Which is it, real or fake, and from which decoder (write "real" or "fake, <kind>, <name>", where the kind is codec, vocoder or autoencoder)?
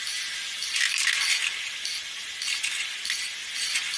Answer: real